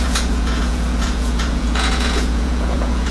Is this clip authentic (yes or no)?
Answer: no